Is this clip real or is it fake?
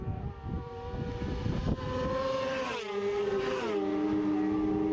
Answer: real